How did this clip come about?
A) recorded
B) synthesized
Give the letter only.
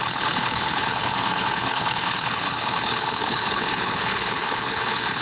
B